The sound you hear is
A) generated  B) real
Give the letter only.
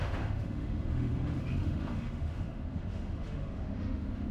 A